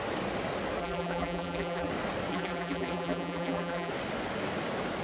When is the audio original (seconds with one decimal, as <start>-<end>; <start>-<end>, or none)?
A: 0.0-0.8; 1.9-2.3; 3.9-5.0